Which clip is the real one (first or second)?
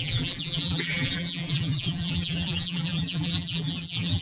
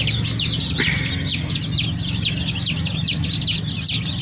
second